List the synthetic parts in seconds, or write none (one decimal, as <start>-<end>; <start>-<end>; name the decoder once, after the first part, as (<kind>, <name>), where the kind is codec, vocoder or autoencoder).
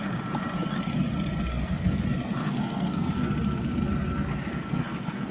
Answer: 1.5-2.0 (codec, SNAC); 2.4-3.3; 4.5-5.3